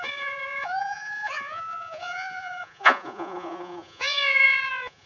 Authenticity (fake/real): fake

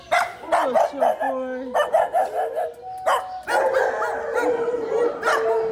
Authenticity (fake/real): real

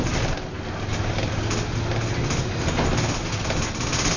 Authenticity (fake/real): real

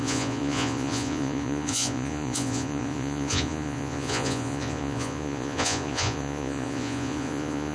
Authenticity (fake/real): fake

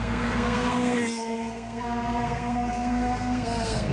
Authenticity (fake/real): fake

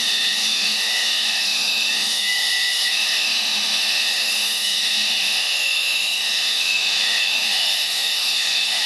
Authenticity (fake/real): fake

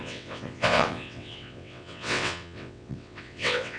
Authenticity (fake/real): fake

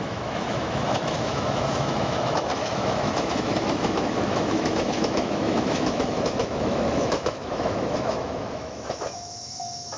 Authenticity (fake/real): fake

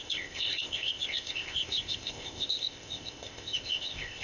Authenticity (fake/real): fake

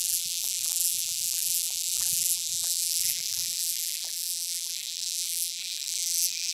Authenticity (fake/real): fake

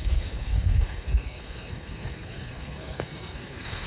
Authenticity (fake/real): fake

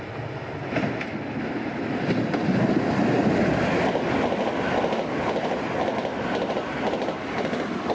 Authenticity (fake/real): real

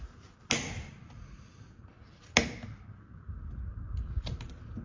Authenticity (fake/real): real